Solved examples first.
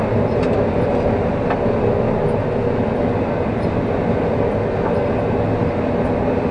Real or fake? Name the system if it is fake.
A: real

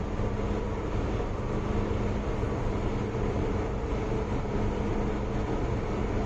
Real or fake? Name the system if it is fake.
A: real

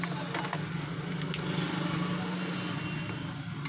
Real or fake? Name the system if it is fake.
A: real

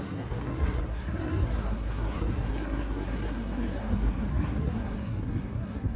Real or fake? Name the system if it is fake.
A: fake, codec, SNAC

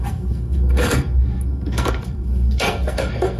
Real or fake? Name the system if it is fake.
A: fake, codec, SNAC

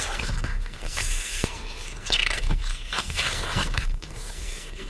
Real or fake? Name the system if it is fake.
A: fake, codec, SNAC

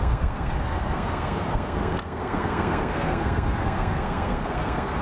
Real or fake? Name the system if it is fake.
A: fake, codec, SNAC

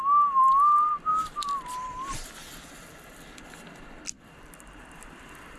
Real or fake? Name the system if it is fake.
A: real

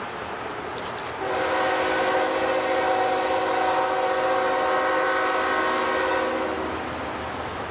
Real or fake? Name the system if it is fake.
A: real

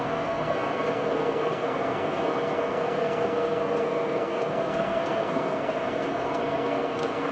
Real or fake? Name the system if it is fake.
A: fake, codec, SNAC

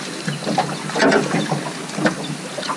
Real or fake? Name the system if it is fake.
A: real